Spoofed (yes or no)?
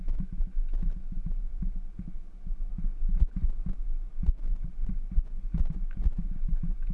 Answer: no